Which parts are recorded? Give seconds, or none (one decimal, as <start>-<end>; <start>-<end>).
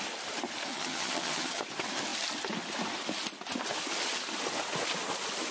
0.0-0.7; 1.6-5.5